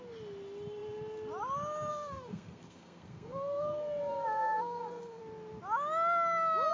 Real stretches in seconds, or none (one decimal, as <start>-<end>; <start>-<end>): 0.0-1.9; 5.2-6.7